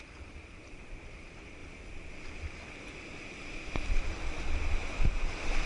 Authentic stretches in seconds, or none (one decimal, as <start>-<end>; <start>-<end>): 1.6-5.0